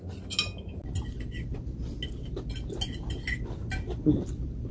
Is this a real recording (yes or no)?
yes